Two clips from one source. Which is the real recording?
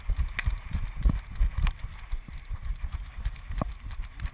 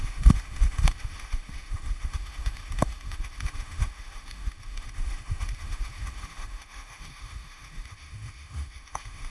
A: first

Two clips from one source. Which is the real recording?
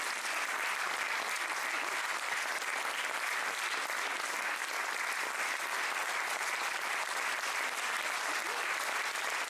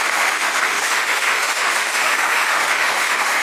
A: first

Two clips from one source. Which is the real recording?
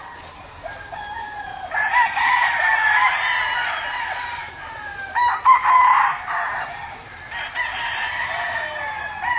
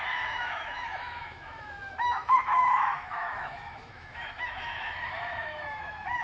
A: first